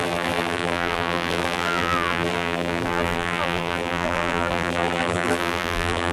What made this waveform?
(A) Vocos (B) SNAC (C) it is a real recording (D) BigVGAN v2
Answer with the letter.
D